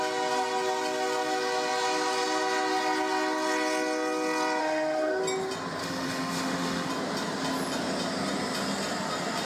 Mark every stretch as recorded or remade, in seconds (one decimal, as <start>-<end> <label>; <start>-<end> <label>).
0.0-4.6 recorded; 4.6-5.2 remade; 5.2-5.8 recorded; 5.8-6.9 remade; 6.9-9.5 recorded